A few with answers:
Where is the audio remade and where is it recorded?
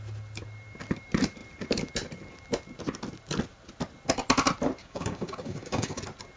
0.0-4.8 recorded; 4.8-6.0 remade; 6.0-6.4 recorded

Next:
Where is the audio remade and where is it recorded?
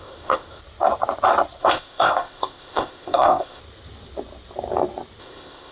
0.0-0.6 remade; 0.6-1.6 recorded; 1.6-3.6 remade; 3.6-5.2 recorded; 5.2-5.7 remade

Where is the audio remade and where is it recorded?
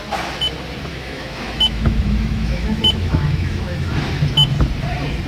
0.0-0.9 recorded; 0.9-3.9 remade; 3.9-5.3 recorded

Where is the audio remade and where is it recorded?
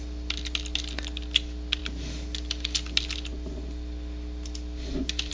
0.0-5.3 recorded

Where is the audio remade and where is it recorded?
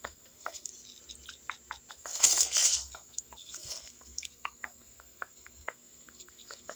0.0-0.7 remade; 0.7-1.9 recorded; 1.9-6.8 remade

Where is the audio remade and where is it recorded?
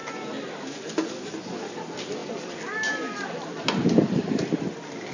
0.0-5.1 recorded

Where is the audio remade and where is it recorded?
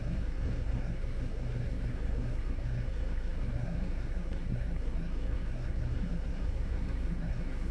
0.0-7.7 remade